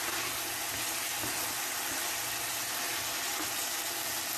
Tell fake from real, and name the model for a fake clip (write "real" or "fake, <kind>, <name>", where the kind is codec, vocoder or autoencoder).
real